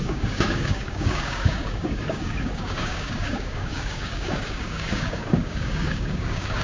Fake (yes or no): yes